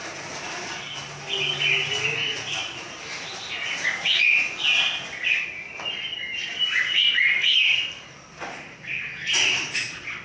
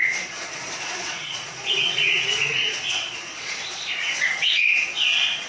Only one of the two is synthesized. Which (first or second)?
second